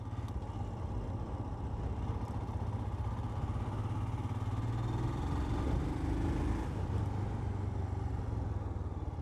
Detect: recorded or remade recorded